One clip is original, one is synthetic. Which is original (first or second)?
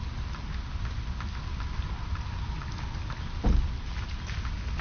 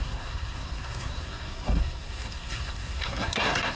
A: first